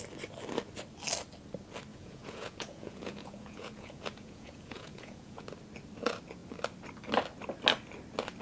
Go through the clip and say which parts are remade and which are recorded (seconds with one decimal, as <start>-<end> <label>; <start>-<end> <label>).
0.0-1.9 recorded; 1.9-5.4 remade; 5.4-8.4 recorded